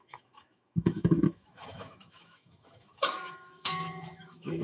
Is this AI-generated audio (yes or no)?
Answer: yes